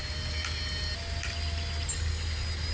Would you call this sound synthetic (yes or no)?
no